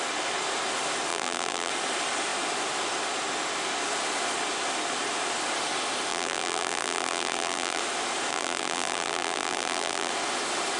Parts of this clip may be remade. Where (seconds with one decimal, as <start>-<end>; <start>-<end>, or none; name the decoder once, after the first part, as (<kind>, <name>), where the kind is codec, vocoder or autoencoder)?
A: 1.1-1.7 (vocoder, BigVGAN v2); 6.1-7.8; 8.3-10.1